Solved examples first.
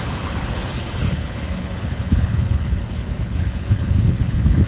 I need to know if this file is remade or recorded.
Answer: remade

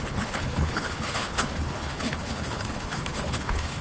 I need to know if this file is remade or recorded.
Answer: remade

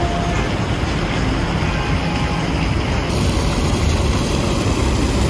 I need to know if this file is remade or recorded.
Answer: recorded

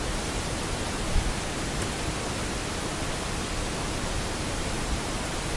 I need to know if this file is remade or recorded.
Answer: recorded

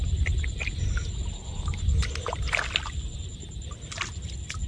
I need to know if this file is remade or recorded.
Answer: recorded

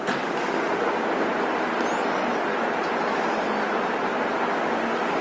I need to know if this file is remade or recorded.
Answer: recorded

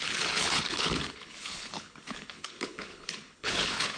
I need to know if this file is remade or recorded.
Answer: remade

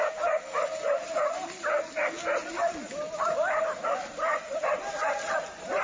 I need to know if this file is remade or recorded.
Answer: recorded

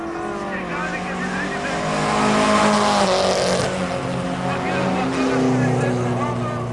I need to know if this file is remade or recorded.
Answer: recorded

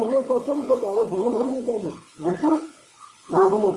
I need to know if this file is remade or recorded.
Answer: remade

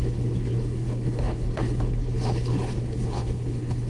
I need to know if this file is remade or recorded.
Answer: remade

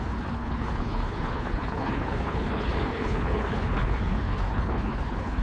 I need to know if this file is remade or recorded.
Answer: remade